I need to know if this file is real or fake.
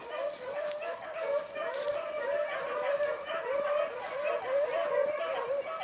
real